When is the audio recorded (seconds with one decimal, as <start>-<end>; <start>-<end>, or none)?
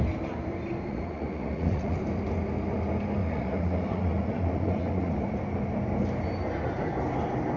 0.0-0.9; 2.0-3.2; 5.4-7.6